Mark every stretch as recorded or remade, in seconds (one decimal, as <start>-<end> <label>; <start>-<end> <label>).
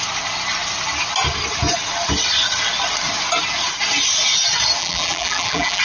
0.0-4.8 recorded; 4.8-5.8 remade